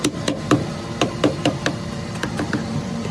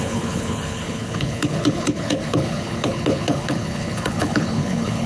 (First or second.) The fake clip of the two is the second